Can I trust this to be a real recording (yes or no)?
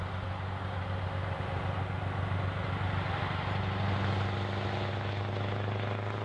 yes